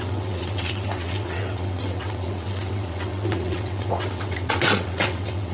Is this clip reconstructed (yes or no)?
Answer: yes